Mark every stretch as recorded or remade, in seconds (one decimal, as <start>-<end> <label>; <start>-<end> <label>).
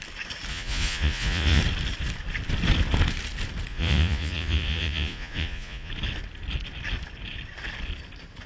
0.0-0.5 recorded; 0.5-1.6 remade; 1.6-3.7 recorded; 3.7-5.9 remade; 5.9-8.5 recorded